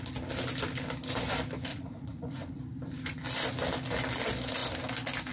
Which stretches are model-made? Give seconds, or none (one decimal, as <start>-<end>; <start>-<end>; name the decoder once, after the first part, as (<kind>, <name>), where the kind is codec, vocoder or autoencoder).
1.7-2.6 (vocoder, Vocos)